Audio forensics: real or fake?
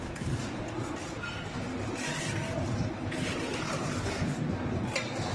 real